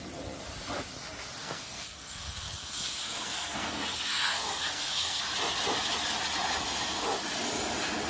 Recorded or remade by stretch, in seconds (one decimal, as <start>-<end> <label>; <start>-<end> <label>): 0.0-1.4 recorded; 1.4-5.2 remade; 5.2-8.1 recorded